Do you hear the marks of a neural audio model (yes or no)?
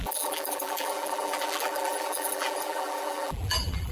yes